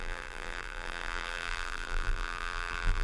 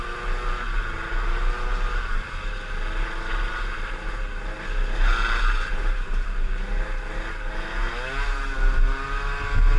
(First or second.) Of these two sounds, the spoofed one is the first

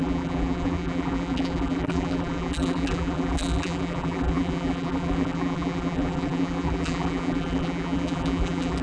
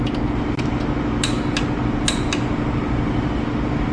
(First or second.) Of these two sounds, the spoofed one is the first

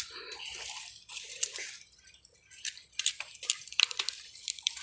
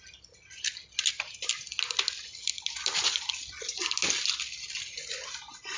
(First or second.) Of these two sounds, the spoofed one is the first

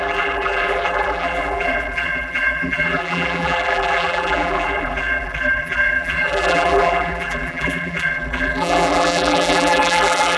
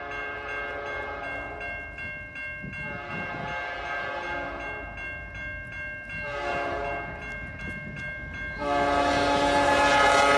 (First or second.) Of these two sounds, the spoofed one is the first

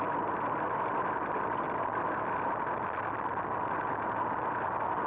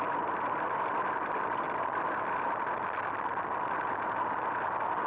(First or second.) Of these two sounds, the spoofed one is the second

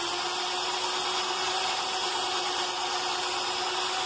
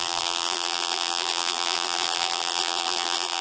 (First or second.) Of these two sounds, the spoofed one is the second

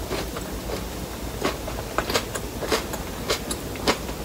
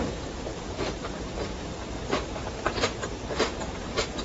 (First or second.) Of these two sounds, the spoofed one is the second